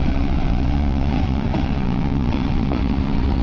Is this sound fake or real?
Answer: fake